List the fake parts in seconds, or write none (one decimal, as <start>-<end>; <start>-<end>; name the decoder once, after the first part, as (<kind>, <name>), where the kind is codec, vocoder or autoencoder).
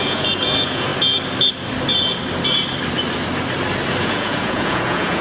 0.0-0.9 (vocoder, Vocos); 4.0-5.2